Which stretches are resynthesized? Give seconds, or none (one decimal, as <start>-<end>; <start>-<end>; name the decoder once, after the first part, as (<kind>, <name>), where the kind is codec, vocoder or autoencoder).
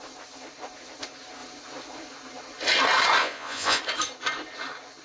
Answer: 3.2-3.8 (vocoder, Vocos)